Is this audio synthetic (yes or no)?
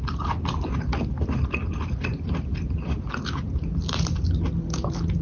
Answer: no